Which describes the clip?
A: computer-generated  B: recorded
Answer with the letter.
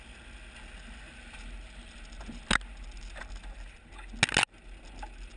B